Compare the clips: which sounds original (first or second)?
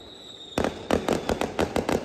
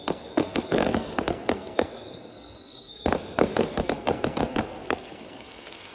first